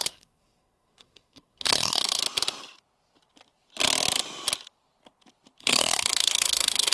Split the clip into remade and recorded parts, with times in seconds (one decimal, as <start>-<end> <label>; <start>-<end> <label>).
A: 0.0-2.2 remade; 2.2-5.6 recorded; 5.6-6.9 remade